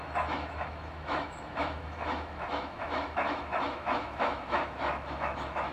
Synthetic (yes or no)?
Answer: yes